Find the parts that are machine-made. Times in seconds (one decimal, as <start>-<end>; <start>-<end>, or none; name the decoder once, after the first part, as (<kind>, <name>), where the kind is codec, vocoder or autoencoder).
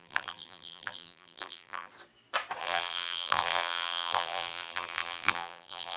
0.0-1.9 (vocoder, BigVGAN v2); 2.6-6.0